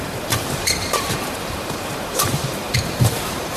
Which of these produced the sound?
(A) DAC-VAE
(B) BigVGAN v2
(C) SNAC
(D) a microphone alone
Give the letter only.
B